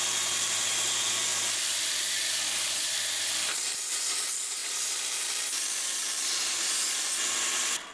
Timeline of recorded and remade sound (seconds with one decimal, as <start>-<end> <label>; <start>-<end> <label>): 0.0-1.3 recorded; 1.3-3.0 remade; 3.0-4.6 recorded; 4.6-5.2 remade; 5.2-7.9 recorded